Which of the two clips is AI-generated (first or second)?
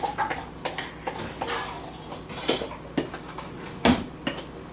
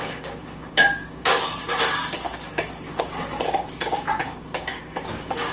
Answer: second